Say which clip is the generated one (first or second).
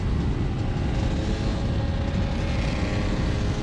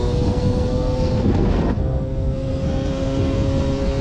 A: second